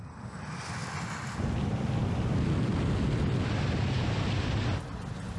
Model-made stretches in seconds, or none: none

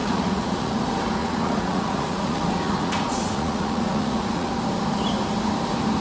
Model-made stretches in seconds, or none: 0.0-0.7 (vocoder, Vocos); 1.2-4.5